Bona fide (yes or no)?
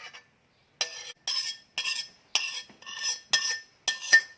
yes